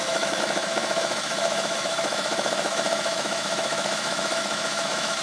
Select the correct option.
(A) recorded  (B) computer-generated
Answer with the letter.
B